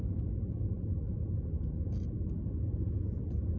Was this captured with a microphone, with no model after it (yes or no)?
yes